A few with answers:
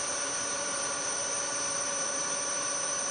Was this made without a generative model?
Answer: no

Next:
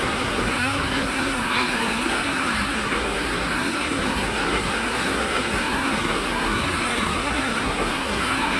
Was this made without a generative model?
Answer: no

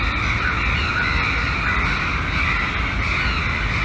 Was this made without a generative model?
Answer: yes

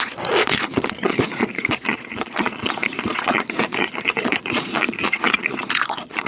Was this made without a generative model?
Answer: no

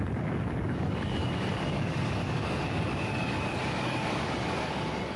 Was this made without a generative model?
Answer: no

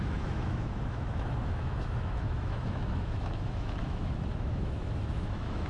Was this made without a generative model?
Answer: no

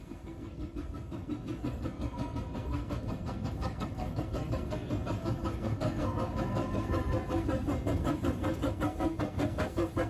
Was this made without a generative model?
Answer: no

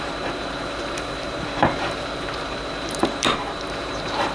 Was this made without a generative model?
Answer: no